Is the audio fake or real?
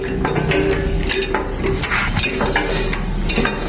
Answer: real